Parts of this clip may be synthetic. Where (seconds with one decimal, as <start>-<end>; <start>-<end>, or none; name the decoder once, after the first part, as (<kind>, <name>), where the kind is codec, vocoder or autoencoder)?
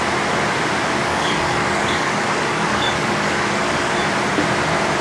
1.0-4.0 (codec, DAC)